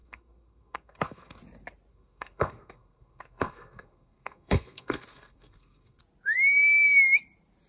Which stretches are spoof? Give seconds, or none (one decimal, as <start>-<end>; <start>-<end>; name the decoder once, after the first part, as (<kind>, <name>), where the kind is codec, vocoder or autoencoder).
0.0-1.4 (codec, SNAC); 1.9-6.0

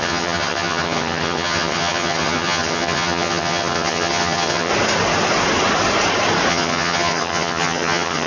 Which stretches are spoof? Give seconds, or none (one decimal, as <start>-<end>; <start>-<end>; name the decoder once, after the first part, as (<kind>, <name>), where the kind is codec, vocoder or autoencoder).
0.0-4.7 (vocoder, HiFi-GAN); 6.5-8.3

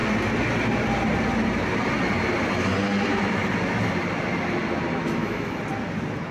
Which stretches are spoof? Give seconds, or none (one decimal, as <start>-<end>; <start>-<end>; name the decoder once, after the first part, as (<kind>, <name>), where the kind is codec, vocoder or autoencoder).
5.0-5.5 (autoencoder, DAC-VAE)

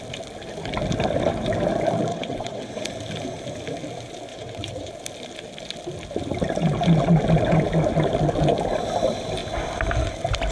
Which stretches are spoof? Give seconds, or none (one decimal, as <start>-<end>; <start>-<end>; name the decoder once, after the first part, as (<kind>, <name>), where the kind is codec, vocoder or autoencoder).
2.1-2.8 (vocoder, WaveNeXt); 4.3-4.9

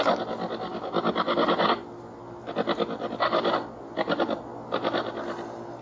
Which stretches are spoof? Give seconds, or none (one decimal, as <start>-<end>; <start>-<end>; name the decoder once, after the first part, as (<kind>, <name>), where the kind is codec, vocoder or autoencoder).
none

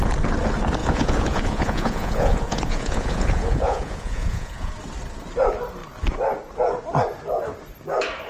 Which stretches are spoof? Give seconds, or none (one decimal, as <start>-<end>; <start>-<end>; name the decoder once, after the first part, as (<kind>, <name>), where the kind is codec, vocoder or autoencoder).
0.8-4.7 (vocoder, Vocos)